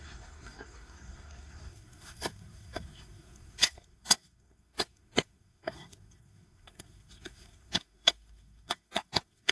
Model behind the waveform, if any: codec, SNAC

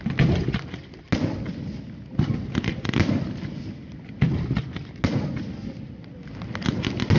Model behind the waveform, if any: none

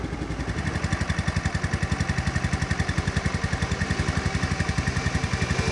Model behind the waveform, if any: none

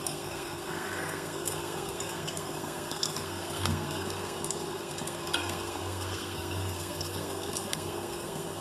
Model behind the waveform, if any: codec, SNAC